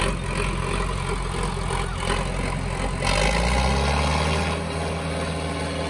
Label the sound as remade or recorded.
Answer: recorded